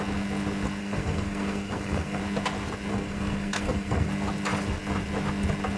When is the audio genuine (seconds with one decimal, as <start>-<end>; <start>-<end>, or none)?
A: 0.0-0.8; 2.2-2.9; 4.1-5.8